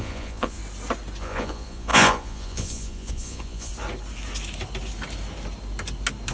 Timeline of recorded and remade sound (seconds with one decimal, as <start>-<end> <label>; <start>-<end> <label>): 0.0-0.6 remade; 0.6-1.2 recorded; 1.2-3.7 remade; 3.7-6.3 recorded